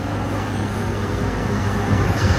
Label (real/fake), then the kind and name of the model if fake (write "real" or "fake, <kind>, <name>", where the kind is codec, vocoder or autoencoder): fake, codec, SNAC